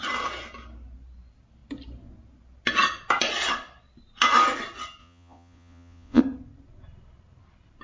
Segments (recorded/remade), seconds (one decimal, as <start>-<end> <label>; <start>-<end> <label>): 0.0-5.0 recorded; 5.0-6.2 remade; 6.2-7.8 recorded